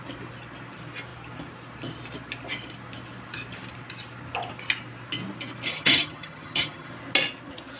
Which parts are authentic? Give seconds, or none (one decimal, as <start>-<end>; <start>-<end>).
0.0-5.7; 6.9-7.8